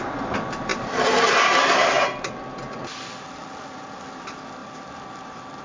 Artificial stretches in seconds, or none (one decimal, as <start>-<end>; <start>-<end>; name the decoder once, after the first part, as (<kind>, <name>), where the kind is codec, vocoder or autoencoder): 0.7-4.0 (vocoder, BigVGAN v2); 4.6-5.6

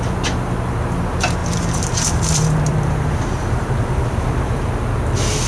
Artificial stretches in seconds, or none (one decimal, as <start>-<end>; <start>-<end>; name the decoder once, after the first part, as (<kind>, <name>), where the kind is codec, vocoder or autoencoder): 1.4-4.7 (vocoder, BigVGAN v2)

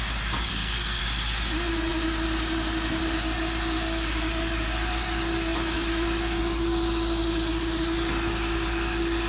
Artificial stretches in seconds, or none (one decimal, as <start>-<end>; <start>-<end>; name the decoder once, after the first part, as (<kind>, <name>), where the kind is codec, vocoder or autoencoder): 0.5-1.0 (codec, SNAC)

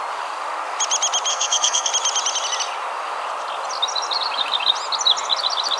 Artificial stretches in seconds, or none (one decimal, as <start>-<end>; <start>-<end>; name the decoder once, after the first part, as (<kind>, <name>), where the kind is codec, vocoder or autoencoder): 1.3-1.9 (codec, SNAC)

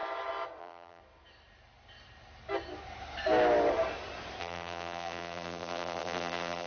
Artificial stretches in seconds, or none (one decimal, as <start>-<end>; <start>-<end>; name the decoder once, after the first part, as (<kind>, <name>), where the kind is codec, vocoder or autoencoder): 0.6-1.0 (vocoder, BigVGAN v2); 4.4-6.7

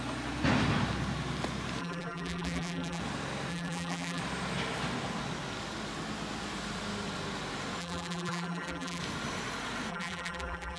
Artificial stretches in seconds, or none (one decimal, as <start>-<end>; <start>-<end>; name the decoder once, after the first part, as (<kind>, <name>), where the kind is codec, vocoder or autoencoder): 1.8-3.0 (vocoder, BigVGAN v2); 3.5-4.2; 7.8-9.0; 9.9-10.8

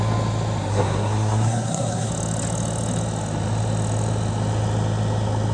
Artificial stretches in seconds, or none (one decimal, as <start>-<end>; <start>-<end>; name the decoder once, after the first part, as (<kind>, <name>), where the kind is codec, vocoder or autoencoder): 0.7-2.1 (codec, SNAC)

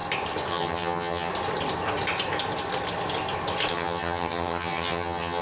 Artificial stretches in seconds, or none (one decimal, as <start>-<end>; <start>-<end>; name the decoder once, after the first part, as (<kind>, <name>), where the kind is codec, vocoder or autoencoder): 0.5-1.3 (vocoder, HiFi-GAN); 3.7-5.4